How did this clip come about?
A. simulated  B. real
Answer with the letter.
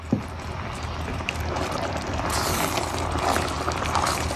A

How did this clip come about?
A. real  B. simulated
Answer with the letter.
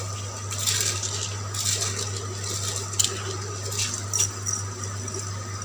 B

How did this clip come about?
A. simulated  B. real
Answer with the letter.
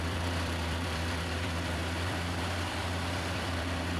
A